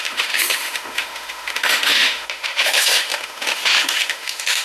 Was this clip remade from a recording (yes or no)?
yes